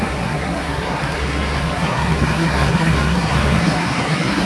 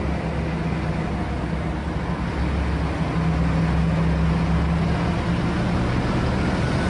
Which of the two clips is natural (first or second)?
second